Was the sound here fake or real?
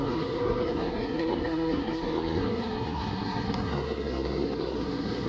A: fake